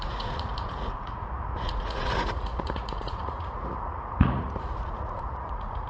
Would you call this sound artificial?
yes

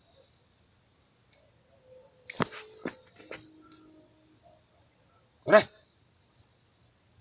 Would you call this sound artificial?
no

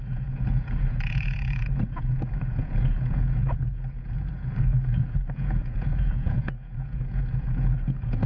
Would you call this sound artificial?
yes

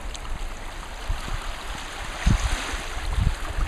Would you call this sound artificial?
no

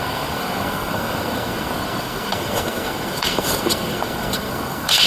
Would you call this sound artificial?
yes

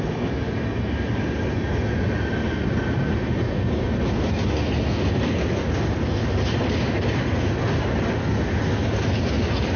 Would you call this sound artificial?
no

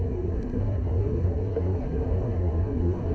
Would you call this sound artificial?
yes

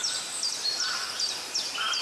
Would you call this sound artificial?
no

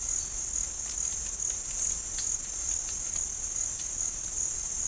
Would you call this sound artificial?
no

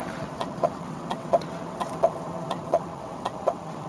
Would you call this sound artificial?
yes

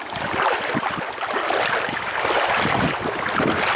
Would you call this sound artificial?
no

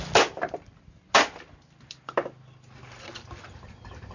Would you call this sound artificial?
no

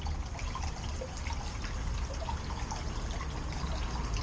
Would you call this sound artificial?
no